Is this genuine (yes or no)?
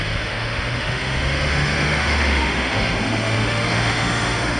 no